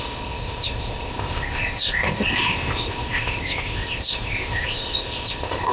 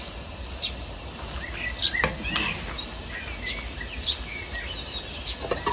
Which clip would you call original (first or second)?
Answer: second